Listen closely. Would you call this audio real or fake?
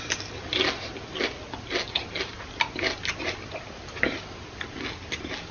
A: real